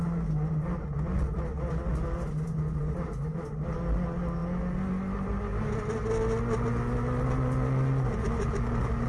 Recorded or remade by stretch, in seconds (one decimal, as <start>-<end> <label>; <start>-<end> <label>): 0.0-9.1 recorded